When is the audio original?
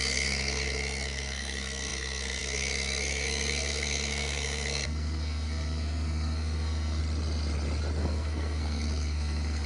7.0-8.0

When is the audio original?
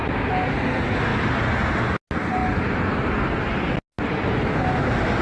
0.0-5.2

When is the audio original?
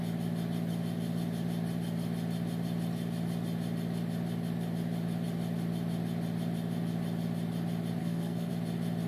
0.0-8.0; 8.5-9.1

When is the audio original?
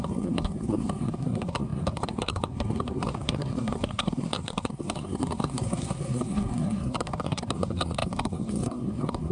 none